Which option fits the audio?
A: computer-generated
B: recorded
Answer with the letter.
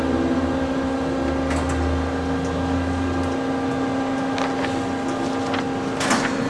B